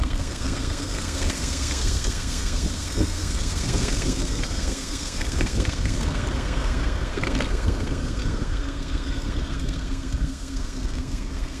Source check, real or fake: fake